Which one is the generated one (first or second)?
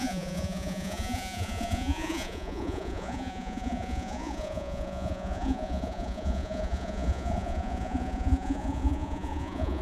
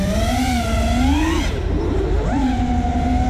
first